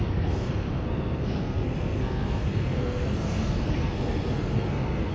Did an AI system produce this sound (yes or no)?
yes